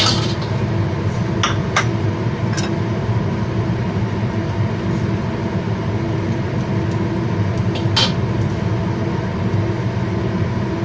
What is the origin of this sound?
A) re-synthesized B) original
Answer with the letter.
B